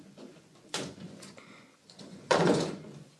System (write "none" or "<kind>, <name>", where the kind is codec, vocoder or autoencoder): vocoder, Vocos